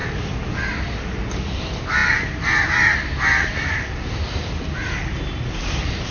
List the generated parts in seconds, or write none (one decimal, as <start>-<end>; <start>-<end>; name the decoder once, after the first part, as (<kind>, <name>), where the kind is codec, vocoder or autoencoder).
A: none